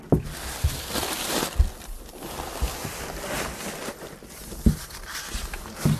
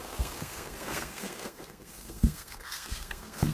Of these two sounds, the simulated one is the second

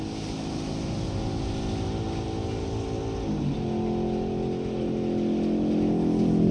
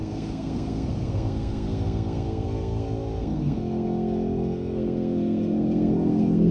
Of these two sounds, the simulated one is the second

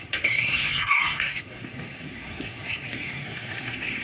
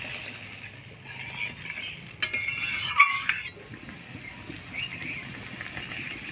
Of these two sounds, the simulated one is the first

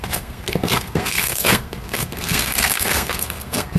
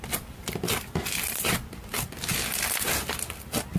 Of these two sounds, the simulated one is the first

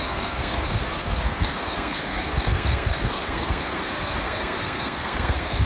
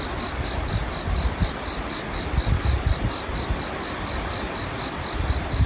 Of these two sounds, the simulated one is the first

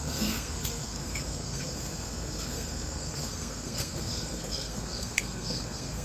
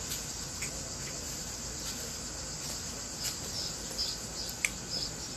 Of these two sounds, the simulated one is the first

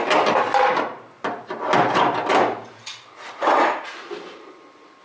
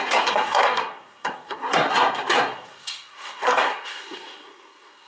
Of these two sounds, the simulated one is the second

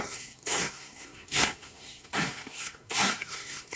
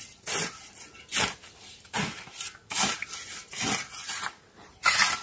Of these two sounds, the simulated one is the first